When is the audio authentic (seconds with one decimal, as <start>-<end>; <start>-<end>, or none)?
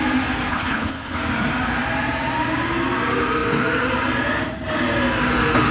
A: 0.0-0.5; 1.2-5.7